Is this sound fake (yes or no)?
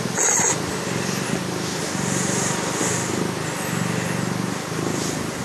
no